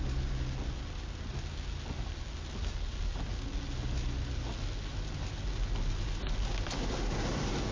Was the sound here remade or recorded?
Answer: recorded